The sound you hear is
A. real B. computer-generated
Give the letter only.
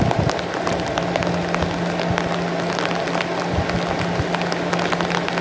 A